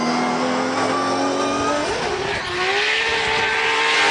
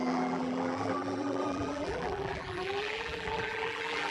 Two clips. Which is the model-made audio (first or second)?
second